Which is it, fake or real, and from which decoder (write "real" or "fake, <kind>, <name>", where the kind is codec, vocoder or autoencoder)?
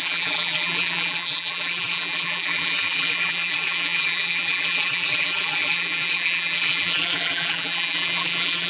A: fake, vocoder, BigVGAN v2